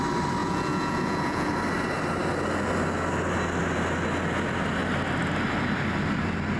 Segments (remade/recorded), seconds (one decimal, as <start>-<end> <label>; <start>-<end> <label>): 0.0-0.4 recorded; 0.4-1.5 remade; 1.5-6.6 recorded